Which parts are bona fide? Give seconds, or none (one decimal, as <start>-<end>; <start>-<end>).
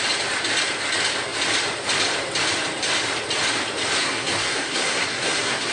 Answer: 0.0-4.0